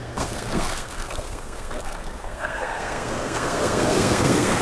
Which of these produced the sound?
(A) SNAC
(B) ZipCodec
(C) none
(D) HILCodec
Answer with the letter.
A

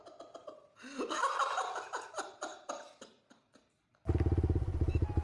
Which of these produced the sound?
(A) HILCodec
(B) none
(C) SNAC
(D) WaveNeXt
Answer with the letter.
B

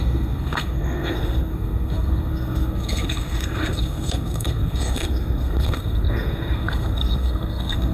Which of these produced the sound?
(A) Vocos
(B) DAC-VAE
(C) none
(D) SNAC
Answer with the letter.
D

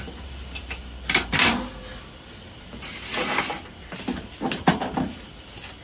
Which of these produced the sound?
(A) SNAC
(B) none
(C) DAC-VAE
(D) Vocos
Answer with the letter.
B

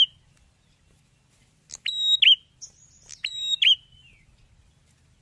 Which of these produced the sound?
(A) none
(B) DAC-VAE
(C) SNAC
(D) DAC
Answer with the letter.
A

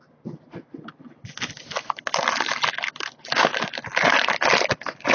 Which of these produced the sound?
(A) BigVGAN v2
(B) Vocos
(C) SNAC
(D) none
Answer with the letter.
D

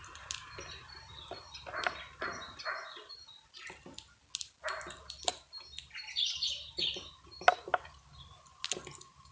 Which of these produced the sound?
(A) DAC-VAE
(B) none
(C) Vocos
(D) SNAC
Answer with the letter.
B